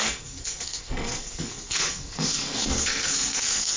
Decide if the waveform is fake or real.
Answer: fake